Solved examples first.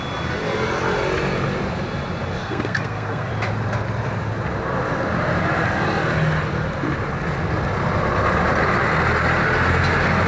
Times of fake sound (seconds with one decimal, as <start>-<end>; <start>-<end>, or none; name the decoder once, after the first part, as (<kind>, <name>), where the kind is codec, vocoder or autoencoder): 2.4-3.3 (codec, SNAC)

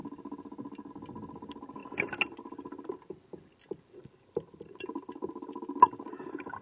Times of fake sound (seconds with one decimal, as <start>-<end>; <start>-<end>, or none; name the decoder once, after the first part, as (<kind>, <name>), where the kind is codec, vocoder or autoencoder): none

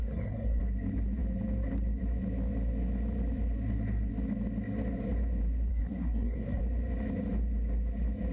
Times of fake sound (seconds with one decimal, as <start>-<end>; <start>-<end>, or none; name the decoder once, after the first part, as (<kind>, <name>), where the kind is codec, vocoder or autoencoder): 0.0-0.6 (codec, SNAC); 5.7-6.6

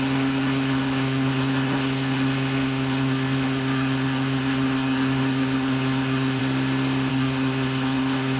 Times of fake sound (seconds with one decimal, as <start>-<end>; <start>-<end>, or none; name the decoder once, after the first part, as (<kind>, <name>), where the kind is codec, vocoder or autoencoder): 0.0-6.4 (codec, SNAC); 7.1-8.4

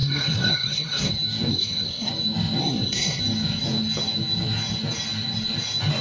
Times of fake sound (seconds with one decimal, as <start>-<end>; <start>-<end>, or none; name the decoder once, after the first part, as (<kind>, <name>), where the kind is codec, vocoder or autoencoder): 0.0-1.1 (codec, SNAC); 1.5-2.1; 2.6-3.2

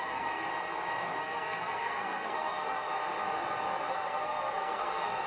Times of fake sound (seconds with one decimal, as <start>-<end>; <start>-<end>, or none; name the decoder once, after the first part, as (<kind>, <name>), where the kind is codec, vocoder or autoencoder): 0.0-0.5 (codec, SNAC); 1.2-2.9; 3.9-5.3

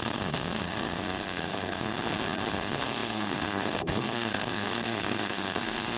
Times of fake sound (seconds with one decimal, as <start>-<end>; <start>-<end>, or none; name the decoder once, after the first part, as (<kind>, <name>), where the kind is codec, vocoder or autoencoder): 0.0-1.9 (codec, SNAC); 2.5-6.0

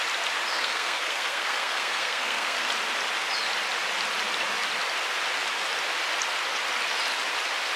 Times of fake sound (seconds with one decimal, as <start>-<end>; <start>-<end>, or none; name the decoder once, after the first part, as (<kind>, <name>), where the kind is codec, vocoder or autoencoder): 0.5-2.7 (codec, SNAC)